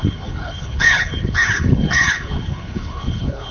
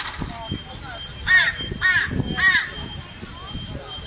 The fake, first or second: first